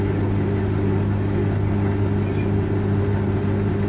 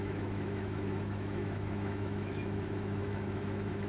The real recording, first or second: first